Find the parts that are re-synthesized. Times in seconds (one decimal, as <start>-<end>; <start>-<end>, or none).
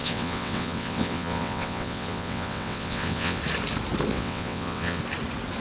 0.0-3.4; 4.1-5.0